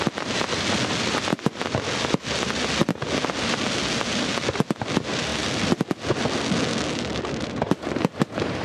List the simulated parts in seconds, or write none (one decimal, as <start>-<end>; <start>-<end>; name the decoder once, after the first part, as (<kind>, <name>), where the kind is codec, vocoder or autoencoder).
none